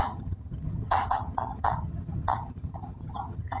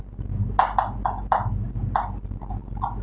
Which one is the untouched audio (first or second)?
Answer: second